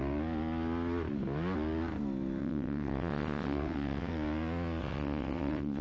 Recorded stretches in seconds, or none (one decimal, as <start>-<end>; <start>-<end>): 0.0-2.4; 4.1-4.8